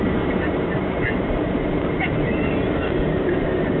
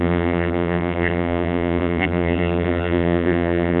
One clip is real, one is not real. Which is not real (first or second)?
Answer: second